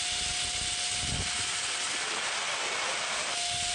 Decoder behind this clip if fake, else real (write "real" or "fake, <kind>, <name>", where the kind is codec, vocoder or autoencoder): real